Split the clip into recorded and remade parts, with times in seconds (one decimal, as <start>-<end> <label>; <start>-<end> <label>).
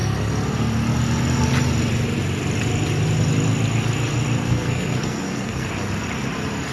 0.0-4.4 recorded; 4.4-5.7 remade; 5.7-6.7 recorded